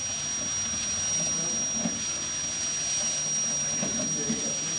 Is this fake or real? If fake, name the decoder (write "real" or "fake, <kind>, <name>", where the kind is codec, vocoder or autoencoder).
real